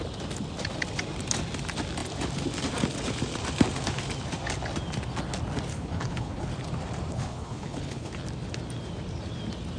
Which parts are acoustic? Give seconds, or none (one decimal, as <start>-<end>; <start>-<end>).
0.0-5.7; 6.5-7.1; 8.1-9.8